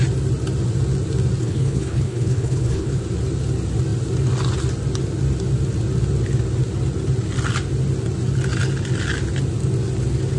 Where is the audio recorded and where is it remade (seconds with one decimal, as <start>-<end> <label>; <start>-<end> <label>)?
0.0-1.4 recorded; 1.4-3.0 remade; 3.0-10.4 recorded